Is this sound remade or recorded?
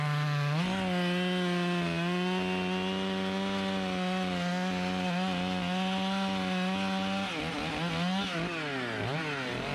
recorded